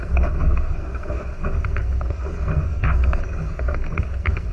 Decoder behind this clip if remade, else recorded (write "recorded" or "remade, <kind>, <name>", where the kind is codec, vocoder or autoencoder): remade, codec, SNAC